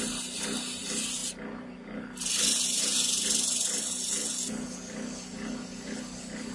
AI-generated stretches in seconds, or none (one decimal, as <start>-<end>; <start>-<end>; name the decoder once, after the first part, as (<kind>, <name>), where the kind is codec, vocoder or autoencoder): none